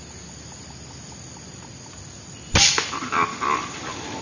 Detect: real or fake real